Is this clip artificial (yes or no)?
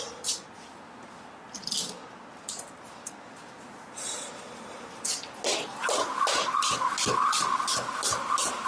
no